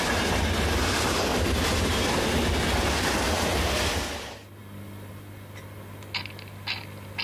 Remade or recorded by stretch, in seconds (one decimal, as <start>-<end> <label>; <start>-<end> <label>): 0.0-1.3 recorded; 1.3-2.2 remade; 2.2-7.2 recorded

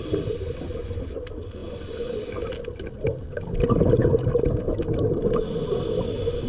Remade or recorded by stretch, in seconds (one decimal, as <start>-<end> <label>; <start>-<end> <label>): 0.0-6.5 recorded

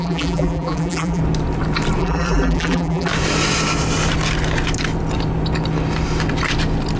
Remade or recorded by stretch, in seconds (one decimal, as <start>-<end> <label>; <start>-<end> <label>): 0.0-1.2 remade; 1.2-2.0 recorded; 2.0-3.1 remade; 3.1-7.0 recorded

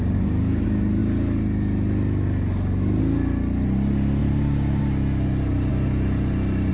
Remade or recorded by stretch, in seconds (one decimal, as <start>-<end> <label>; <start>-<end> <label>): 0.0-4.2 recorded; 4.2-4.8 remade; 4.8-5.7 recorded; 5.7-6.7 remade

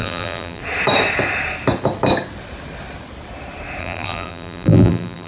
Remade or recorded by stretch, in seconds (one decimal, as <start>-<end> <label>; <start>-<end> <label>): 0.0-0.6 remade; 0.6-3.8 recorded; 3.8-5.3 remade